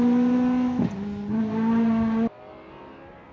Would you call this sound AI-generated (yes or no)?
no